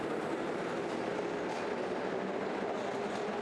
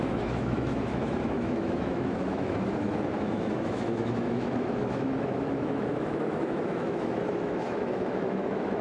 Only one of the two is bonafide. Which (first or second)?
first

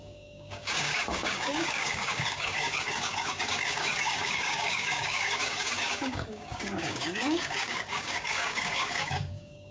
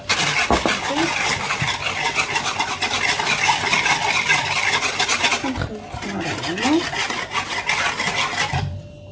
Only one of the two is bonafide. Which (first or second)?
second